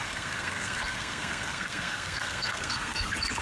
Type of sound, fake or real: fake